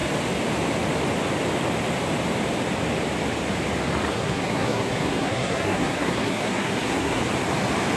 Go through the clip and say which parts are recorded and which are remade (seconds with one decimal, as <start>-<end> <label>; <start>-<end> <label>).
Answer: 0.0-4.1 recorded; 4.1-7.2 remade; 7.2-8.0 recorded